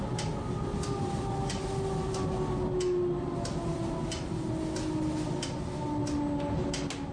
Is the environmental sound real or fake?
real